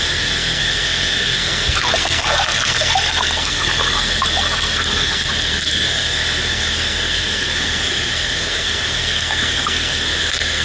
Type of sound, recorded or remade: remade